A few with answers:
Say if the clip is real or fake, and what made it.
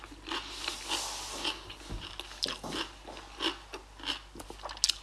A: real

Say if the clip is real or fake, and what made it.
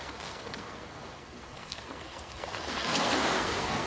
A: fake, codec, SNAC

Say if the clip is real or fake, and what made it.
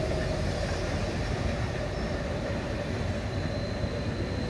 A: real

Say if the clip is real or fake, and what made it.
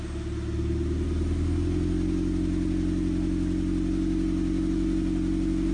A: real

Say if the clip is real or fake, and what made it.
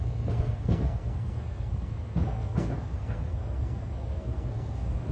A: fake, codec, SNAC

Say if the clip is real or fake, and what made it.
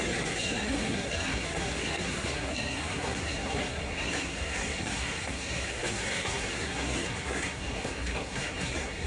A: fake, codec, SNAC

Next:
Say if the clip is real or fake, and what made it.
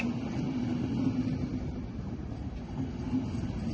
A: real